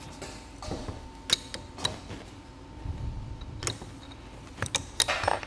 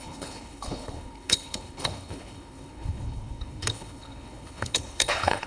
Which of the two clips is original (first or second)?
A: first